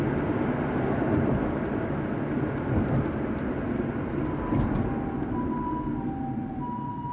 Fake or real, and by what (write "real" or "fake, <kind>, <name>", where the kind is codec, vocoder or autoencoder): real